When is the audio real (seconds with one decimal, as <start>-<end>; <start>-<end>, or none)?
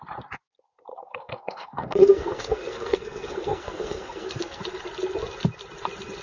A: 0.0-0.9; 4.6-6.2